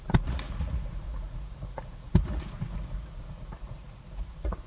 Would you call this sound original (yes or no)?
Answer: no